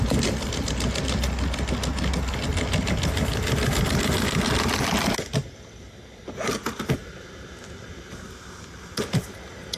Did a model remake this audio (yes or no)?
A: no